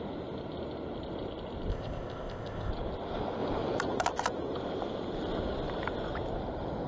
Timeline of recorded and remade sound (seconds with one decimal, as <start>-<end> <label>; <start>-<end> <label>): 0.0-1.7 recorded; 1.7-2.7 remade; 2.7-6.9 recorded